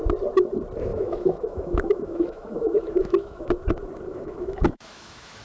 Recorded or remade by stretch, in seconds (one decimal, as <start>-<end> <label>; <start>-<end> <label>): 0.0-0.9 recorded; 0.9-3.5 remade; 3.5-4.1 recorded; 4.1-5.4 remade